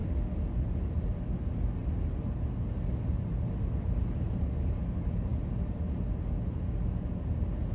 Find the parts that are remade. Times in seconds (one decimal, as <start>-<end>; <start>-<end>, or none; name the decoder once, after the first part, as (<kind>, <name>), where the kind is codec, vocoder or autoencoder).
0.0-1.4 (vocoder, BigVGAN v2)